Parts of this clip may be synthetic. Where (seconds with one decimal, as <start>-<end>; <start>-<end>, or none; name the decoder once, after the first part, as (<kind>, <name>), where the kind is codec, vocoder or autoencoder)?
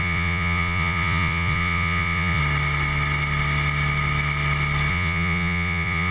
0.0-2.4 (vocoder, Vocos); 4.9-6.1